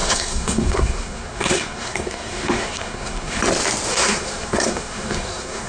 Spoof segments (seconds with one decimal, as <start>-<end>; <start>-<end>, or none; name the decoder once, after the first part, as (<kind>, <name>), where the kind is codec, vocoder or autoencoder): 0.0-3.4 (codec, SNAC); 3.9-5.7